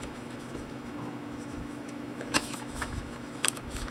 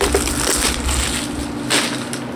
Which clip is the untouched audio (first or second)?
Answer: second